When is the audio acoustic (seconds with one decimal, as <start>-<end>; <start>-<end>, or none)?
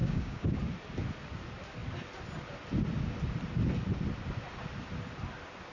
0.6-5.7